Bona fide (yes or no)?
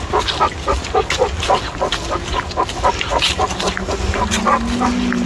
yes